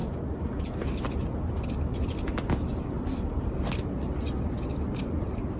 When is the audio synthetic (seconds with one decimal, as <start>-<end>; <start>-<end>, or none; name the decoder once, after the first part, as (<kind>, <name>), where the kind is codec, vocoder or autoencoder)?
none